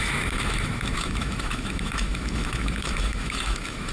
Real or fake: fake